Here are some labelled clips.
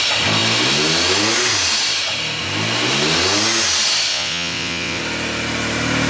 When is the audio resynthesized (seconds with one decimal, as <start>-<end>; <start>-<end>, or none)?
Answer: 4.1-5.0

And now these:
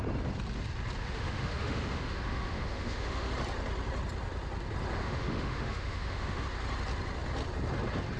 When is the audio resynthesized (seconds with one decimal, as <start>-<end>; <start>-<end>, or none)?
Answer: 1.0-3.3; 5.0-6.4

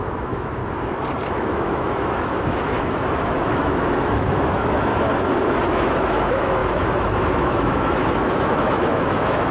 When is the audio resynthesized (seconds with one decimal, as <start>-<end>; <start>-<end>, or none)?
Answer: 0.0-0.6; 1.3-4.9; 5.5-9.5

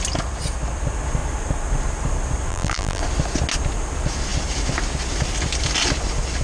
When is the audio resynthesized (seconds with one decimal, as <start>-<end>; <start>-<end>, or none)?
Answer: 2.5-3.0

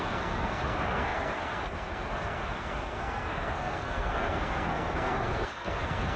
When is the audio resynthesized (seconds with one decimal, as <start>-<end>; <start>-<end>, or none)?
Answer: 0.0-6.2

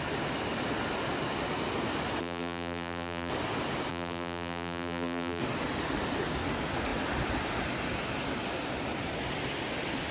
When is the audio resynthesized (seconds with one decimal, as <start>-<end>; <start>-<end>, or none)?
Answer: 2.2-3.3; 3.9-5.4

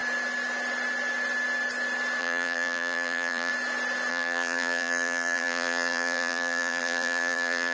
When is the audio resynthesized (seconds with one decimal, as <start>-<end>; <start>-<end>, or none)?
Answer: 2.2-3.5; 4.1-7.7

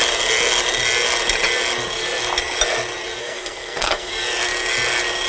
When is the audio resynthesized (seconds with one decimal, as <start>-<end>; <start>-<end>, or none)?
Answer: 3.2-4.1